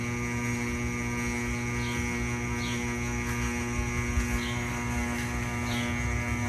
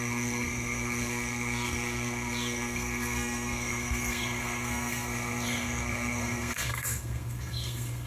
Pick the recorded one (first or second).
first